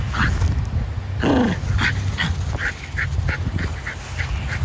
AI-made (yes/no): no